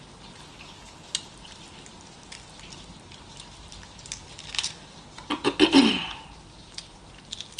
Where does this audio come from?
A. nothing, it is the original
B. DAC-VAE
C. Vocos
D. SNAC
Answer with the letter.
A